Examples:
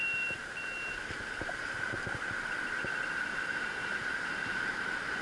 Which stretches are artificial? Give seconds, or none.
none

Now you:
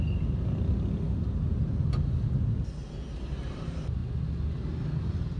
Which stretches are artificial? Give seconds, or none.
none